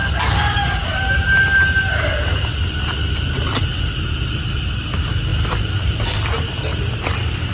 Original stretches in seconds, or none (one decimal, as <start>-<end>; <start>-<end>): 0.0-7.5